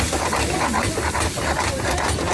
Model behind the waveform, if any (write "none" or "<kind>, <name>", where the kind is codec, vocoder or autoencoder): none